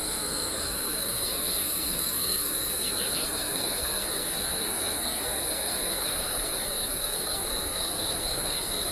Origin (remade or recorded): remade